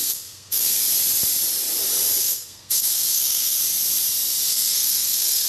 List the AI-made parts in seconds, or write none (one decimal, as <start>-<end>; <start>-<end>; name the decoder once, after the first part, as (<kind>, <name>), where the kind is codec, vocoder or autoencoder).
0.0-0.8 (codec, SNAC); 2.2-3.6; 4.5-5.5